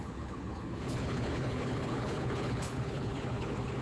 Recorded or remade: remade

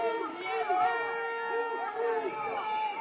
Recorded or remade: recorded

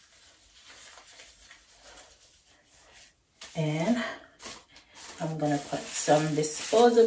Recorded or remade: recorded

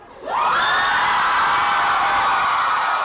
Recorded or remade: recorded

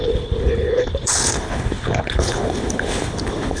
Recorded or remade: remade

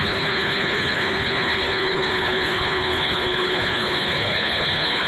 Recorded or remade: remade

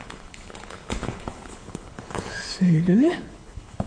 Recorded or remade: remade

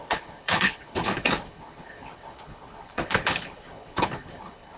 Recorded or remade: remade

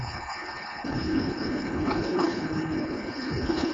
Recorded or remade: remade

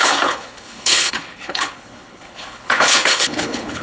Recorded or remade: remade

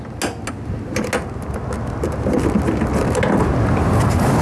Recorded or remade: recorded